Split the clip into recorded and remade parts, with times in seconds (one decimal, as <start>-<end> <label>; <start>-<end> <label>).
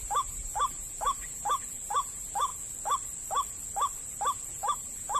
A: 0.0-2.5 remade; 2.5-4.5 recorded; 4.5-5.2 remade